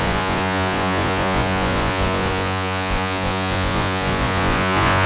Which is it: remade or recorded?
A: remade